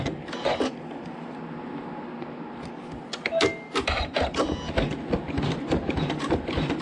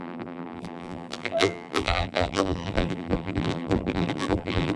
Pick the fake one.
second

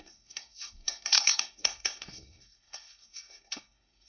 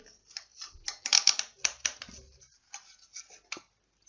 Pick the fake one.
first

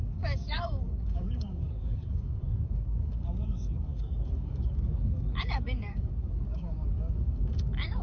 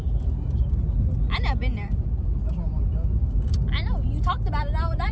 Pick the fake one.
first